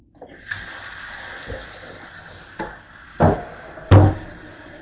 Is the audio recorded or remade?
remade